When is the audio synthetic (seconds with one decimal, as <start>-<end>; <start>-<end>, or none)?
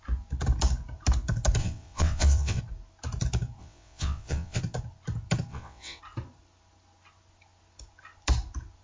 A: 1.6-2.6; 3.6-4.6; 5.5-6.0